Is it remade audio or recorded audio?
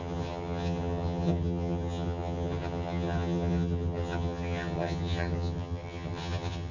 remade